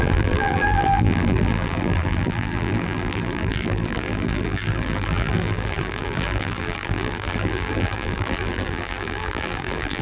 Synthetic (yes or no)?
yes